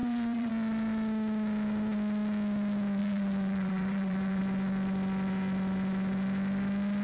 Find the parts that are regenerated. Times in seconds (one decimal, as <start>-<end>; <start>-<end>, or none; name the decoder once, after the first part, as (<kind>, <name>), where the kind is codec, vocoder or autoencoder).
0.0-0.5 (vocoder, BigVGAN v2); 3.0-4.4